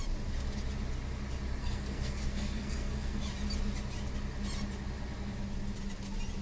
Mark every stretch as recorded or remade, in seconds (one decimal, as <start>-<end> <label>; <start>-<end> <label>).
0.0-1.6 recorded; 1.6-3.2 remade; 3.2-6.4 recorded